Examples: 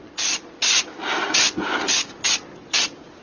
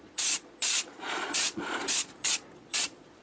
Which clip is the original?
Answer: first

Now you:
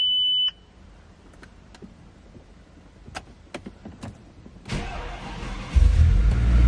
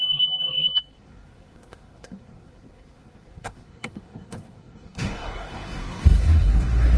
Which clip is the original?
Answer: first